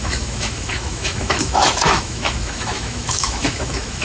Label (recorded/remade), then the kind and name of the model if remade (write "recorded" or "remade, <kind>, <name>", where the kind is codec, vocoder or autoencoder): remade, autoencoder, DAC-VAE